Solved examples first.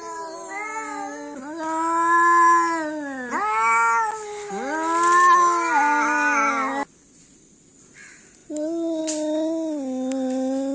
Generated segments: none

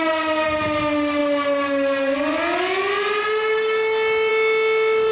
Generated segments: none

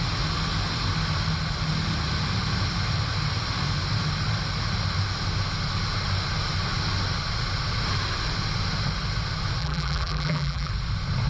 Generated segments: 9.6-10.7

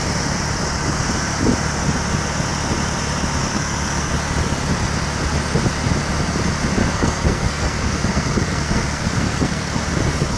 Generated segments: 3.4-4.1; 6.8-9.8

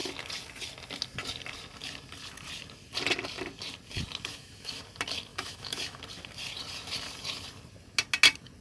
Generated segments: 4.3-4.8; 5.3-6.0

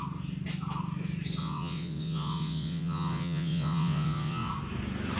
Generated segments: 1.4-4.5

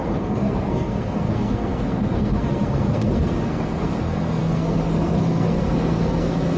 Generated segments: 0.0-6.6